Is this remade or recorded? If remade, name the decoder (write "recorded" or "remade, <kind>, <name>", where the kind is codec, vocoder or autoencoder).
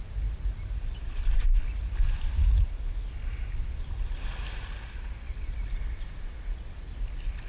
recorded